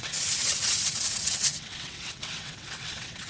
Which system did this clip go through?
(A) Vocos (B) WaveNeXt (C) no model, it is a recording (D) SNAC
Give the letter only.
B